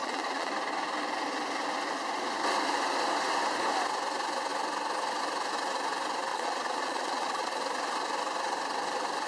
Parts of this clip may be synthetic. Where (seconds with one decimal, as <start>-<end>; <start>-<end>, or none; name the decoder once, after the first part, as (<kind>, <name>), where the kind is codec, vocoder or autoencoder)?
0.0-0.5 (vocoder, Vocos); 6.3-7.6